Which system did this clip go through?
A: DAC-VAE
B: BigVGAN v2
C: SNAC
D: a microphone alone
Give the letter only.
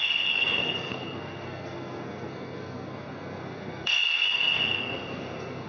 C